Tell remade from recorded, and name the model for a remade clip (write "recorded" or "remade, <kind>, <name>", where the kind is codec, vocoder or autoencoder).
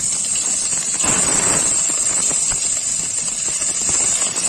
recorded